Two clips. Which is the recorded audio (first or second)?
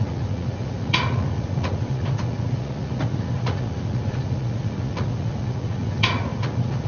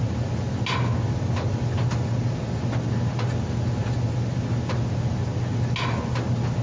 second